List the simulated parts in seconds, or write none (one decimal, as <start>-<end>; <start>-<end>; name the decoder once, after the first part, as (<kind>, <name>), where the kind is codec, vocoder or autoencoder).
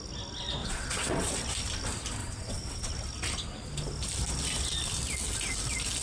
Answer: 0.6-1.3 (vocoder, WaveNeXt); 2.2-2.9